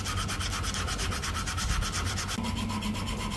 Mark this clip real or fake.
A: real